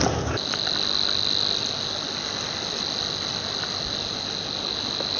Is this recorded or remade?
recorded